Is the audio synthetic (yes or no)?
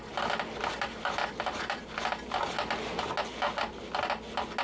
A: no